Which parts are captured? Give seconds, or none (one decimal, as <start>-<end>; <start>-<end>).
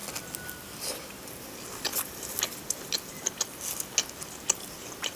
0.0-5.2